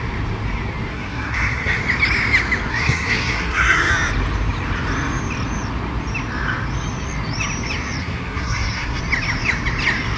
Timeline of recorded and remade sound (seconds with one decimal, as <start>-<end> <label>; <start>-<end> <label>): 0.0-0.9 recorded; 0.9-1.8 remade; 1.8-2.7 recorded; 2.7-3.9 remade; 3.9-8.0 recorded; 8.0-9.0 remade; 9.0-10.2 recorded